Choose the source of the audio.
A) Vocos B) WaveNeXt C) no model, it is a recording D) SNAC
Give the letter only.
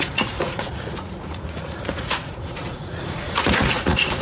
A